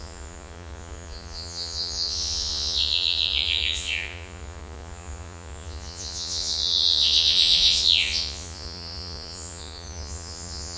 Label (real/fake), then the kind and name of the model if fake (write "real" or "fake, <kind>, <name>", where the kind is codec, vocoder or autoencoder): fake, vocoder, Vocos